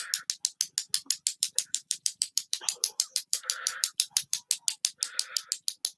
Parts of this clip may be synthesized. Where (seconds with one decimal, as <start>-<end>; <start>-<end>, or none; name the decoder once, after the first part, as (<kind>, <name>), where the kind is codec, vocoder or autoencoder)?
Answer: 1.3-4.4 (vocoder, BigVGAN v2)